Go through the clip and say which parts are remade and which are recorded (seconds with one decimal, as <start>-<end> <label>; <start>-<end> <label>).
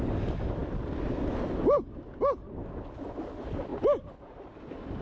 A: 0.0-0.6 recorded; 0.6-2.2 remade; 2.2-5.0 recorded